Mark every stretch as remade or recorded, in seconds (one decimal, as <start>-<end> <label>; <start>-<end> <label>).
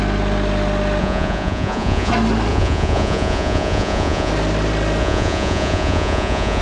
0.0-1.0 recorded; 1.0-2.1 remade; 2.1-2.5 recorded; 2.5-4.3 remade; 4.3-5.0 recorded; 5.0-6.6 remade